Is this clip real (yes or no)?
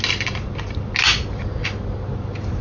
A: yes